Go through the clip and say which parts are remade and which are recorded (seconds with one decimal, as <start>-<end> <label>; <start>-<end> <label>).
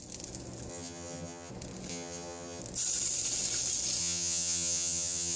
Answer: 0.0-0.7 recorded; 0.7-1.5 remade; 1.5-1.9 recorded; 1.9-2.6 remade; 2.6-4.0 recorded; 4.0-5.4 remade